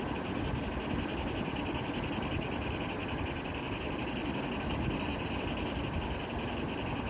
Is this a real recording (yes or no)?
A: yes